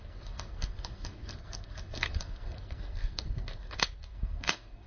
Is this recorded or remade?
remade